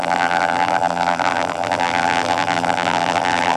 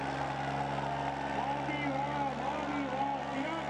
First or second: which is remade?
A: first